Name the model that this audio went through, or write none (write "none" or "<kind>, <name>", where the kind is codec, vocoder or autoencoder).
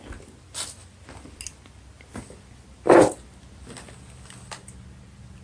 none